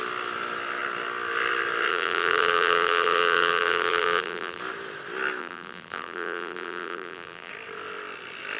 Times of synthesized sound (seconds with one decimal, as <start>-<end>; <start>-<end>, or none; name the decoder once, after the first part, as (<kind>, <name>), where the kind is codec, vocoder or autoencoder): 1.9-4.6 (vocoder, BigVGAN v2); 5.4-7.5